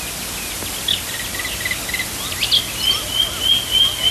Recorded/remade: recorded